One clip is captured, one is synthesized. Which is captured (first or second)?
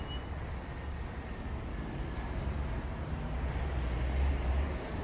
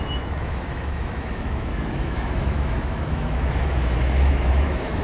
first